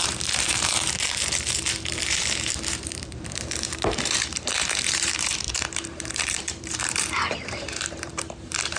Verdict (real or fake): fake